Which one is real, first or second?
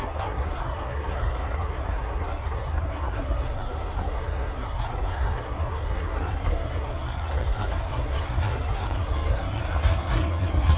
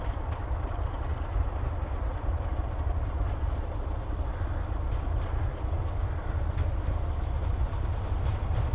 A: second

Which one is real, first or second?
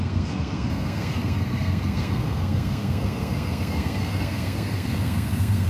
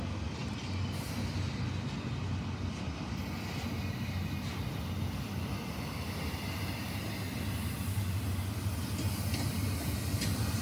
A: second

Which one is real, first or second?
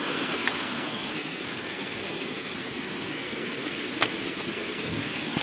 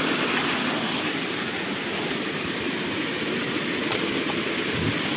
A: second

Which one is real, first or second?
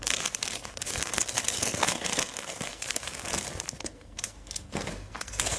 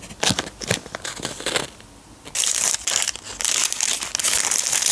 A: second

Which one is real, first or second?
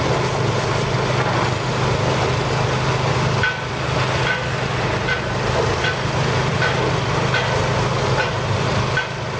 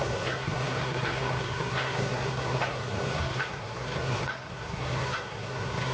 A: first